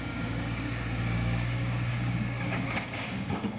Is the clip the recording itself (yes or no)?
no